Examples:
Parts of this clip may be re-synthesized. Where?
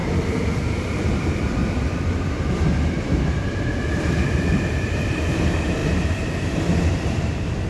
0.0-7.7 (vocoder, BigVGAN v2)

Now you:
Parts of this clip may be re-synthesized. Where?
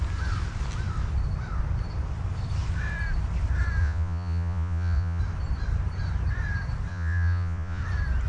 3.8-5.2 (vocoder, Vocos); 6.9-7.8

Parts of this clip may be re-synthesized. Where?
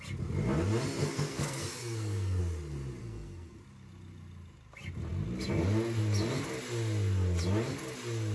1.0-2.4 (codec, SNAC); 3.0-3.6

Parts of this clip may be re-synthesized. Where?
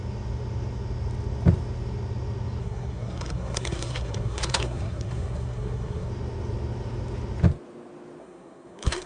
2.6-6.1 (codec, SNAC); 8.2-9.1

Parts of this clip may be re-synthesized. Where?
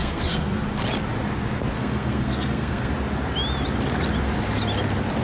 0.0-0.6 (codec, SNAC); 1.7-2.9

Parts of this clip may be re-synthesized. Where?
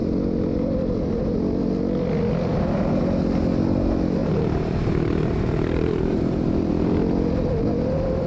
4.2-6.7 (vocoder, BigVGAN v2)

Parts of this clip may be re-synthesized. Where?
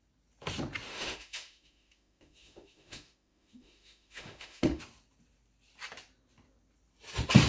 0.9-4.8 (autoencoder, DAC-VAE)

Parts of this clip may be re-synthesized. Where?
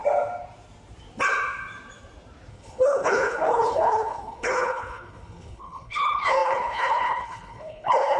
2.5-8.2 (codec, HILCodec)